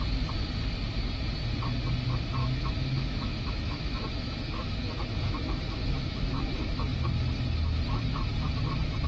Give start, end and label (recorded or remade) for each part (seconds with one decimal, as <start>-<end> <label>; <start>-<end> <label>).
0.0-2.4 recorded; 2.4-6.4 remade; 6.4-9.1 recorded